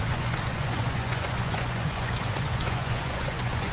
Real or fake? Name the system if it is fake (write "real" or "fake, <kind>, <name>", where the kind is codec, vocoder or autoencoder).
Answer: fake, vocoder, Vocos